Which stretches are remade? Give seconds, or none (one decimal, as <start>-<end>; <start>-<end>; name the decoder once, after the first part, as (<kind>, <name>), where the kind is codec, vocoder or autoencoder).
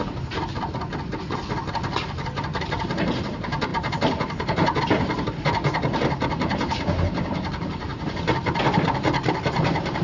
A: 0.0-0.5 (vocoder, BigVGAN v2); 1.7-10.0